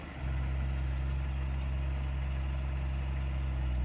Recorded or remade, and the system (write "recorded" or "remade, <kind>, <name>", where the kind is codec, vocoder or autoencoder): recorded